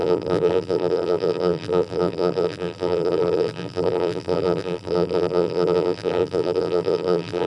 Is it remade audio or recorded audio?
remade